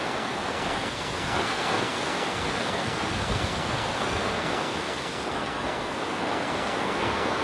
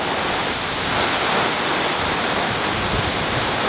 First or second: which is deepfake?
first